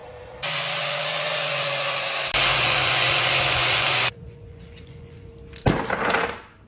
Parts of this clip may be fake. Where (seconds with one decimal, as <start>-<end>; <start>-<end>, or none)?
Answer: 0.0-2.1; 2.5-5.3